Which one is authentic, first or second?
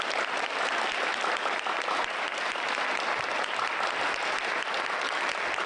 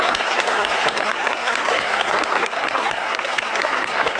first